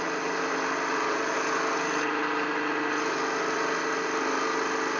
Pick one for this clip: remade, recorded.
recorded